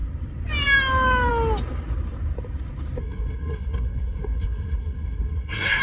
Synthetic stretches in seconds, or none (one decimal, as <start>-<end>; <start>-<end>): 3.0-5.8